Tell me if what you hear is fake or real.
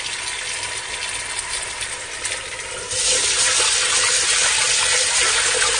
real